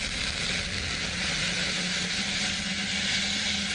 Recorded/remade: recorded